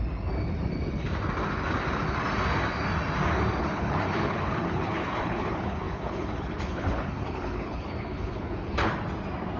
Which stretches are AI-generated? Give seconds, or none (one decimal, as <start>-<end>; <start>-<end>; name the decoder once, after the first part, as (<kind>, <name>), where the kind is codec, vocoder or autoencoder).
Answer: 3.6-8.9 (codec, HILCodec)